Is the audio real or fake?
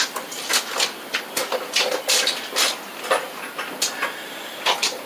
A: real